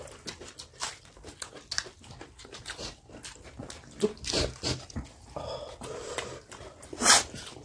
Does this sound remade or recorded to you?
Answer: recorded